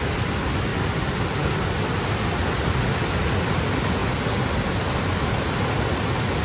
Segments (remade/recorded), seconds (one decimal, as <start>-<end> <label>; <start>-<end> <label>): 0.0-6.4 recorded